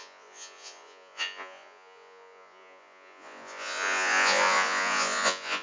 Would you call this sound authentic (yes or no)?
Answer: no